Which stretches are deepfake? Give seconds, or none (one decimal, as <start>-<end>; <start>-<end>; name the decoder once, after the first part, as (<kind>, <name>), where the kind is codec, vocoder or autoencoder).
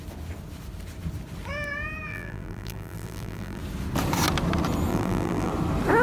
2.1-3.6 (vocoder, BigVGAN v2); 4.9-5.5